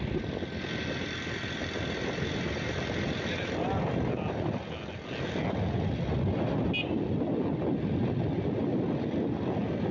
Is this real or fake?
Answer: real